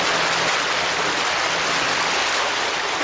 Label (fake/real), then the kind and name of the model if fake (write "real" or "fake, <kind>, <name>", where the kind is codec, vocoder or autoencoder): real